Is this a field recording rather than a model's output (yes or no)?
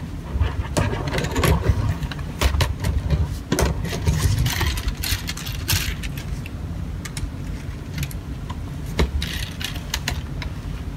yes